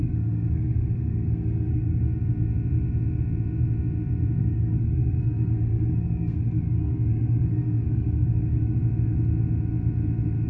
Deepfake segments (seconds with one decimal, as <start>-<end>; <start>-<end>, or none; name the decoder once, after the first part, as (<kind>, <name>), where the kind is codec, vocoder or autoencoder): 0.0-2.0 (codec, SNAC); 4.4-8.8